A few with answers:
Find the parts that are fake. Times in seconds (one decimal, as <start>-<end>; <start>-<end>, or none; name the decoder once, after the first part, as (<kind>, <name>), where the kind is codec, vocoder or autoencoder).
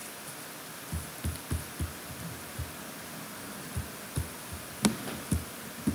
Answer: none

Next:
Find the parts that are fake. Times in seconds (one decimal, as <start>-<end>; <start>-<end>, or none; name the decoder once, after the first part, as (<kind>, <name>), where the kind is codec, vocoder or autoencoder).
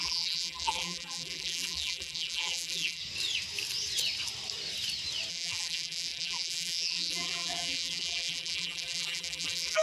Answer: 0.0-3.0 (vocoder, BigVGAN v2); 5.3-9.8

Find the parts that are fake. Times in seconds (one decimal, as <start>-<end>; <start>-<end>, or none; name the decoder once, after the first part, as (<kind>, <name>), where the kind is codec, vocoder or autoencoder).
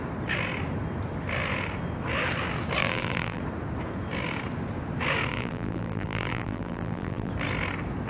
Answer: 2.8-3.4 (vocoder, BigVGAN v2); 5.3-7.3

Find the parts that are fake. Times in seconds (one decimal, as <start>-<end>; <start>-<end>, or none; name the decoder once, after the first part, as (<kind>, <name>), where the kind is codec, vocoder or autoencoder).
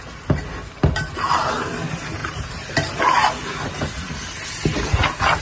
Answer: 2.2-3.0 (vocoder, BigVGAN v2)